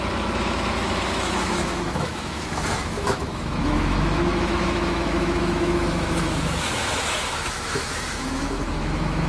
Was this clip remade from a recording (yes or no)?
yes